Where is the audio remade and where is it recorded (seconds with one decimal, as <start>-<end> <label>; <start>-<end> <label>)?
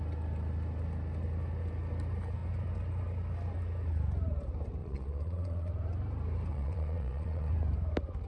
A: 0.0-4.8 recorded; 4.8-5.7 remade; 5.7-6.5 recorded; 6.5-7.5 remade; 7.5-8.3 recorded